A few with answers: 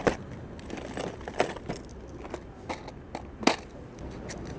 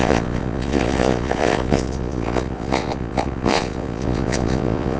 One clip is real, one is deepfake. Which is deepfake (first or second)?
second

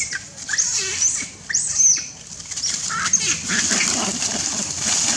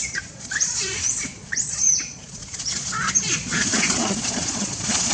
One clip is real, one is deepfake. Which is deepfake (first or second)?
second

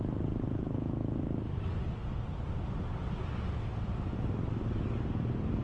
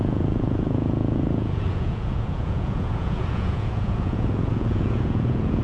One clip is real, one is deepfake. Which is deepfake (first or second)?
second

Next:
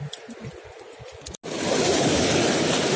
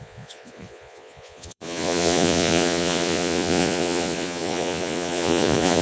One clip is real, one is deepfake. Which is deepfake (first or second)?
second